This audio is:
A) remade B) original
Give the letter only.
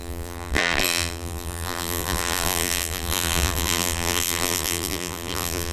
A